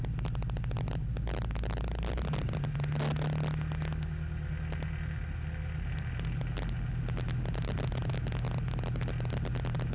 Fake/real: real